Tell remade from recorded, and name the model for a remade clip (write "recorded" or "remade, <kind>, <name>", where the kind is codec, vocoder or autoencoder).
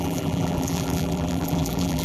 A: remade, vocoder, BigVGAN v2